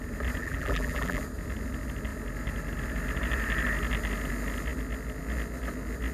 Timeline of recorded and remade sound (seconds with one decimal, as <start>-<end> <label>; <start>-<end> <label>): 0.0-0.4 recorded; 0.4-1.2 remade; 1.2-6.1 recorded